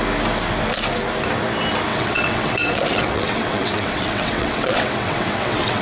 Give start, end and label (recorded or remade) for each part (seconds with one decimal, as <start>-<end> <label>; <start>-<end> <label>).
0.0-1.9 recorded; 1.9-5.8 remade